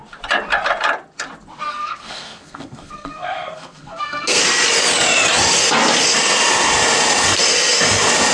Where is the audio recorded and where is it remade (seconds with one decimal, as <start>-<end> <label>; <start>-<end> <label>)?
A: 0.0-1.7 recorded; 1.7-4.4 remade; 4.4-8.3 recorded